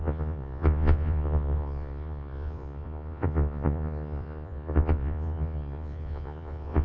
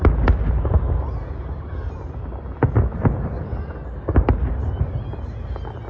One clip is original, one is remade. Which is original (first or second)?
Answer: second